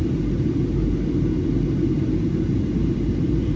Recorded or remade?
recorded